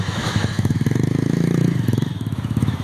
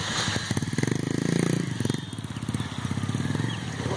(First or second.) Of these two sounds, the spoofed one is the first